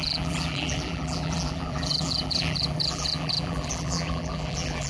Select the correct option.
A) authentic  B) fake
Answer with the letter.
B